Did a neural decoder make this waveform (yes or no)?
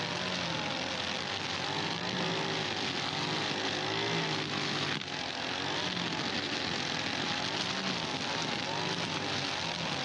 no